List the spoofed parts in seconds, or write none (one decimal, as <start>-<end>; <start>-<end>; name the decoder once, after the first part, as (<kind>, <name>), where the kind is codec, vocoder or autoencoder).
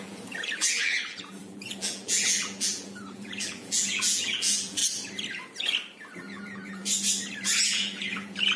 0.0-4.8 (vocoder, BigVGAN v2); 6.2-6.8; 7.6-8.6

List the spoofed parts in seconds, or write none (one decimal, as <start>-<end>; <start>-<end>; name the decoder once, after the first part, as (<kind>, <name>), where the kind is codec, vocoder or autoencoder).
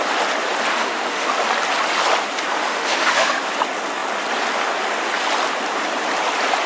0.7-1.3 (autoencoder, DAC-VAE); 2.6-3.4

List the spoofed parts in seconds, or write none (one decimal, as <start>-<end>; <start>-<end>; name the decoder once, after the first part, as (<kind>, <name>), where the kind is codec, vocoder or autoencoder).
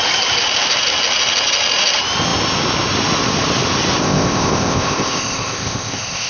4.0-6.3 (codec, ZipCodec)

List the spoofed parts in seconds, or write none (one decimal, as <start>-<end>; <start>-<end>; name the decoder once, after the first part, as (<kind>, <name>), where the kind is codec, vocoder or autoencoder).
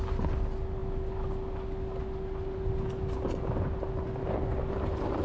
none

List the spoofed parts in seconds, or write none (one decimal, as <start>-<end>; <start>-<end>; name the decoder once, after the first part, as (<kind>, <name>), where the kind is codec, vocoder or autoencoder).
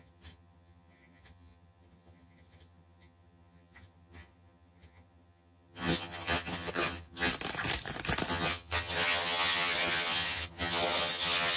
0.0-7.3 (vocoder, HiFi-GAN); 8.3-11.6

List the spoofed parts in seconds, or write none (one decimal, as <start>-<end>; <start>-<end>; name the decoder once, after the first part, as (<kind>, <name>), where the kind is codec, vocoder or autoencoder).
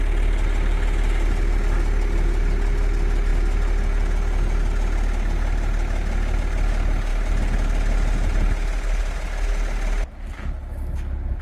none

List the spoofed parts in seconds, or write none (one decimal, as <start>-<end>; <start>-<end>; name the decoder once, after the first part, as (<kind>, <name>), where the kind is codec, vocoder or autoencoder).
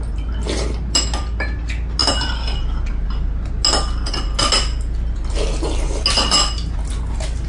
none